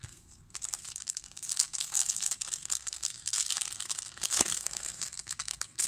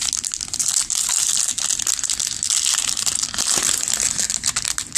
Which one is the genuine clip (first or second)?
second